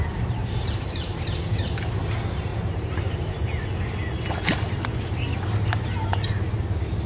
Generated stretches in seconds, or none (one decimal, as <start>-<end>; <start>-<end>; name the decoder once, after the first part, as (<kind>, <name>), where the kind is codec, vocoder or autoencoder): 0.4-1.7 (vocoder, BigVGAN v2); 2.5-3.5